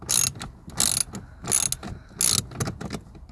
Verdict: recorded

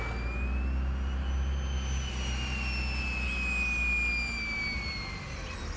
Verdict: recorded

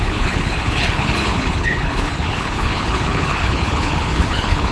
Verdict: remade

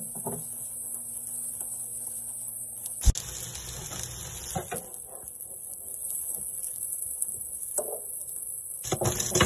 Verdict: recorded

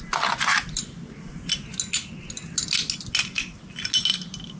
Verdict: recorded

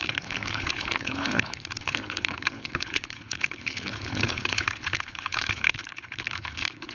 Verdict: remade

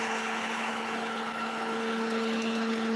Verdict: remade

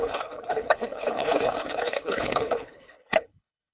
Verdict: remade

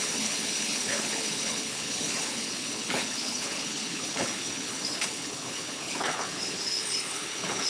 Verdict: remade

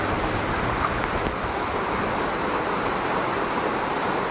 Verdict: recorded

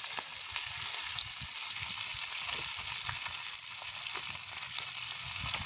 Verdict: recorded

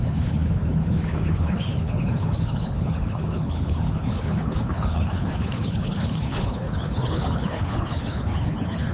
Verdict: remade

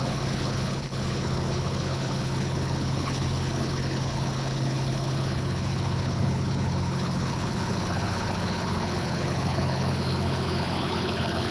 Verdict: remade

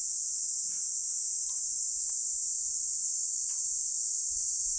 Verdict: recorded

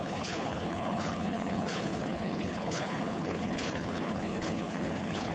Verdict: remade